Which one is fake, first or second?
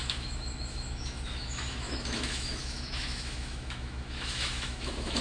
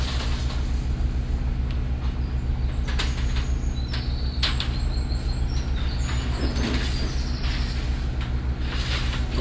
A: first